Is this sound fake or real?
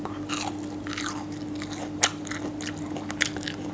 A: real